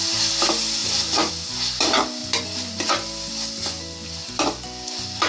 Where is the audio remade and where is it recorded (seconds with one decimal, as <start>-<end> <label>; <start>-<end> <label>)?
0.0-0.8 recorded; 0.8-1.3 remade; 1.3-4.2 recorded; 4.2-5.3 remade